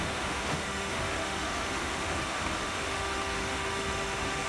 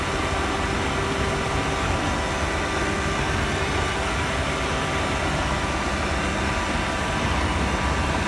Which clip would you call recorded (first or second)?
second